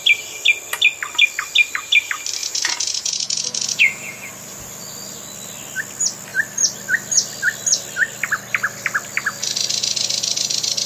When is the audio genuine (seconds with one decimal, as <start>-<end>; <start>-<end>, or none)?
0.0-2.4; 4.3-10.9